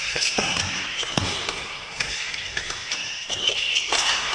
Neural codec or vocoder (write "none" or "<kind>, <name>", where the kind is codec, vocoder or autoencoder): codec, SNAC